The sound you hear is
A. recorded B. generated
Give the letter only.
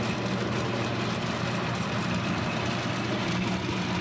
A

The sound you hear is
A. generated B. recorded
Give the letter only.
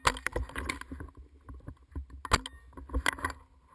B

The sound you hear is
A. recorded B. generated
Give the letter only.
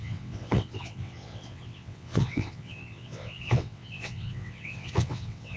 B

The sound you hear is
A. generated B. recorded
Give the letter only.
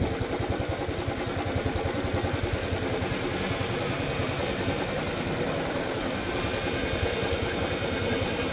B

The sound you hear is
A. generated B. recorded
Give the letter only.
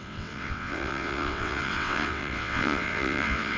A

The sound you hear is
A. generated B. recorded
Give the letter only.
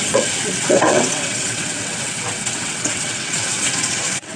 A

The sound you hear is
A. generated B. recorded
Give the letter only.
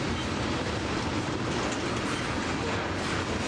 B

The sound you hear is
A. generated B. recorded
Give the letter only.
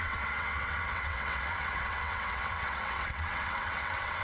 A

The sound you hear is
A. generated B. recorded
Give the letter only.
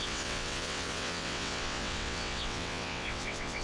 A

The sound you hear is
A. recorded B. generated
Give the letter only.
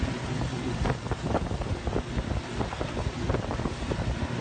A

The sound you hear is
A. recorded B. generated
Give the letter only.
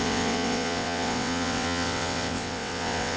B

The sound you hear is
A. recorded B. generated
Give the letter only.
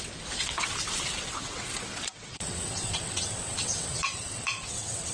B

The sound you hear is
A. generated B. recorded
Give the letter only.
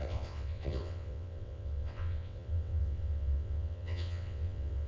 A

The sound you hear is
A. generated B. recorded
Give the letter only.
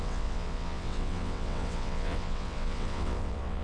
A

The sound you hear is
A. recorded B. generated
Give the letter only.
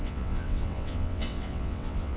B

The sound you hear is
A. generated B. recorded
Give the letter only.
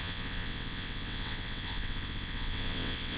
A